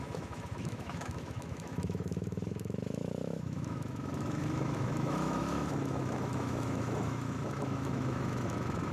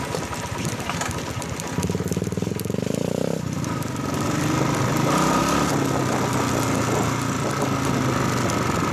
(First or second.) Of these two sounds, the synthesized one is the first